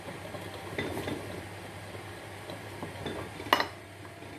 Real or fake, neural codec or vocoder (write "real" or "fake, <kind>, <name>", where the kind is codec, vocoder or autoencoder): real